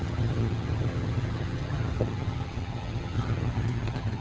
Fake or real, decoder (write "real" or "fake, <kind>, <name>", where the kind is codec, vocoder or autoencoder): fake, vocoder, HiFi-GAN